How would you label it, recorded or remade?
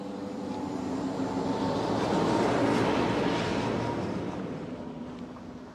recorded